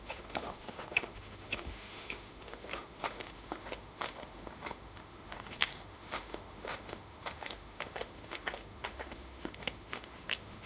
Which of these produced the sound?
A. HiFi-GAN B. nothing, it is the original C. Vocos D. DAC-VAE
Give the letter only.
D